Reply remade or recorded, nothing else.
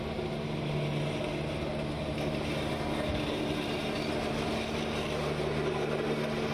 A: recorded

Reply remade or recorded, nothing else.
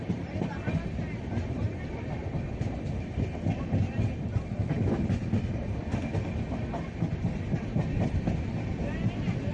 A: recorded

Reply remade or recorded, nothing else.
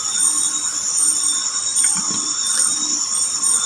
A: recorded